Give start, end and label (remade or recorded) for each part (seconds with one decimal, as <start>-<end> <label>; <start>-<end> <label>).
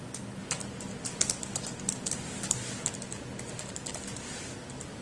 0.0-3.8 recorded; 3.8-4.4 remade; 4.4-5.0 recorded